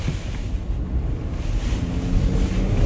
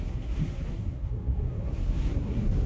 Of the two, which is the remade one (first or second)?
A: second